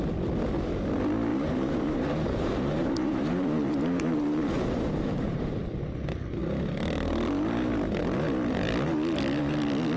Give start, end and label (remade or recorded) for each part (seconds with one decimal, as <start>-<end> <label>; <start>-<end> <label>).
0.0-1.3 recorded; 1.3-5.5 remade; 5.5-10.0 recorded